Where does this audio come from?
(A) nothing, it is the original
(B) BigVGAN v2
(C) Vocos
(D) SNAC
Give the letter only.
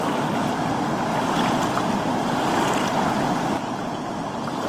A